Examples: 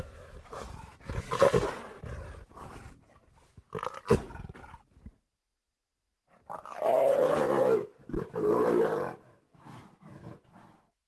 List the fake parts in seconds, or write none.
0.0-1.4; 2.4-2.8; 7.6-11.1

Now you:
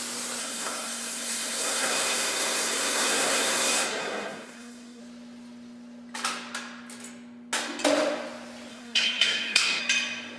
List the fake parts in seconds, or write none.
0.4-5.0; 8.7-9.8

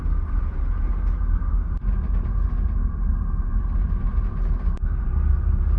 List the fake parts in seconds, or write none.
0.0-5.8